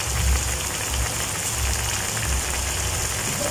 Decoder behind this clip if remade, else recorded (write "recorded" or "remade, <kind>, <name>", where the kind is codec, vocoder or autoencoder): recorded